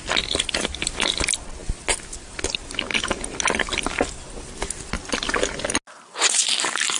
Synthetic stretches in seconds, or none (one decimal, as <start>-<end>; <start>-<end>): none